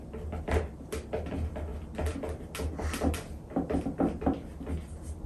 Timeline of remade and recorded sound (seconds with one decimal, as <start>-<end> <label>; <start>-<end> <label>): 0.0-5.3 recorded